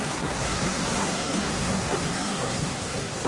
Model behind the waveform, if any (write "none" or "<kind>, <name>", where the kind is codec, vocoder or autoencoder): codec, SNAC